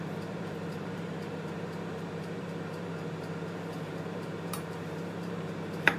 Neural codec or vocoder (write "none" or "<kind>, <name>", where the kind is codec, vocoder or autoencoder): vocoder, BigVGAN v2